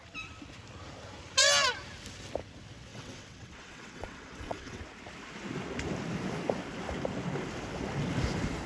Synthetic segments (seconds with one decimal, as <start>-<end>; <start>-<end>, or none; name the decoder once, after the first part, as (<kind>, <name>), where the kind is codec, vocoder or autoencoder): 2.9-4.8 (vocoder, WaveNeXt)